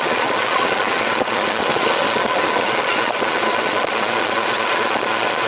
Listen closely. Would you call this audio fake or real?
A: fake